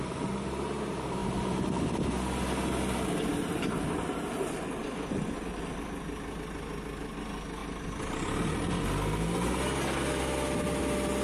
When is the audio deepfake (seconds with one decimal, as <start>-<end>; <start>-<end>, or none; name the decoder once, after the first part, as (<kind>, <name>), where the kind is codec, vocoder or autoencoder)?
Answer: 7.6-8.7 (vocoder, BigVGAN v2)